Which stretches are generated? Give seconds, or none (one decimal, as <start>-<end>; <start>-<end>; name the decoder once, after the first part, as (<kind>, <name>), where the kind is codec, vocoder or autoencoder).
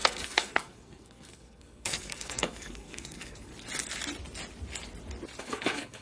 0.0-3.5 (codec, SNAC); 5.4-6.0